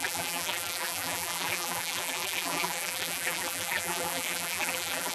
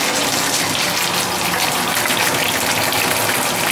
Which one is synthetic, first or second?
first